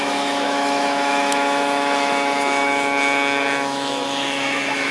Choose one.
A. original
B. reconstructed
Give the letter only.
B